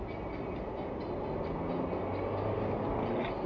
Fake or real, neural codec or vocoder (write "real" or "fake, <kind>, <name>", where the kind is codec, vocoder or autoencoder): real